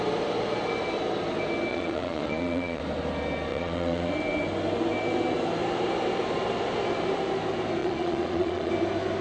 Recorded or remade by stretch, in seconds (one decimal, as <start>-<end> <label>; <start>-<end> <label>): 0.0-1.7 recorded; 1.7-2.8 remade; 2.8-3.5 recorded; 3.5-4.1 remade; 4.1-7.8 recorded; 7.8-8.7 remade; 8.7-9.2 recorded